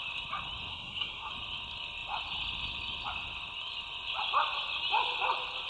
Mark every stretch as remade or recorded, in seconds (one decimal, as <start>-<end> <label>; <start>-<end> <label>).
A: 0.0-0.7 recorded; 0.7-1.3 remade; 1.3-5.7 recorded